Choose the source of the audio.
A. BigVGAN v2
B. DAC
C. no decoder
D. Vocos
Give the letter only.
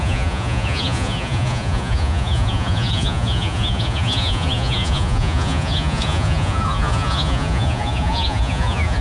D